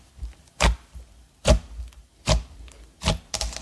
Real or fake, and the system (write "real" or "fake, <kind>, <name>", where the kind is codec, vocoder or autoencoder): real